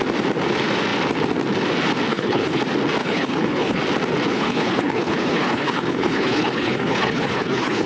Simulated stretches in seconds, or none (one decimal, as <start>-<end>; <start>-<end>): 2.1-2.6; 3.0-3.8; 4.3-7.9